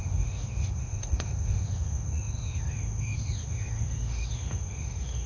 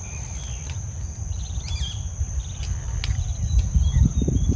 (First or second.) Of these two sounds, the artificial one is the first